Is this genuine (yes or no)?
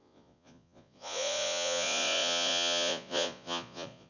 no